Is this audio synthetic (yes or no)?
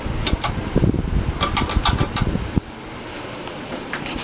no